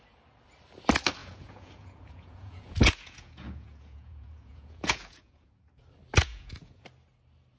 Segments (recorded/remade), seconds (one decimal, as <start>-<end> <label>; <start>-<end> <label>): 0.0-1.2 recorded; 1.2-5.8 remade; 5.8-6.2 recorded; 6.2-6.8 remade; 6.8-7.6 recorded